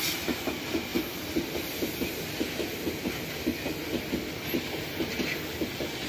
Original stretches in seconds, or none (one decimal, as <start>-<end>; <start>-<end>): 0.0-0.9; 2.3-6.1